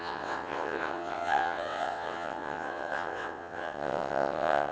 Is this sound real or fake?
fake